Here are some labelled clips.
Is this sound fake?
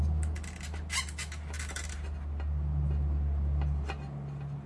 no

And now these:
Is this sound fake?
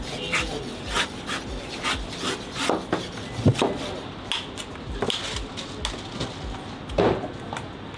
no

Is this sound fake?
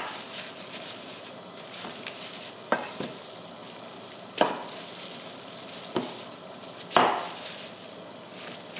no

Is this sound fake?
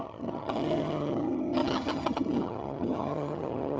yes